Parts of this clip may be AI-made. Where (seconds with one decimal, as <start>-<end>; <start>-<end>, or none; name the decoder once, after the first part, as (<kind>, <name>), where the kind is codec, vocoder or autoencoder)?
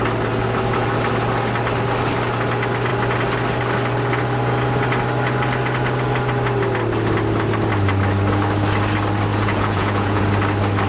9.3-10.2 (vocoder, Vocos)